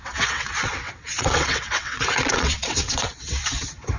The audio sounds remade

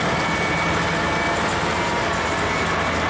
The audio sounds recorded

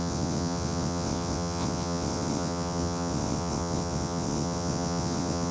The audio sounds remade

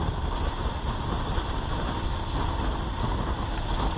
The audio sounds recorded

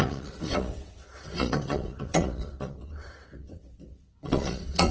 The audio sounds remade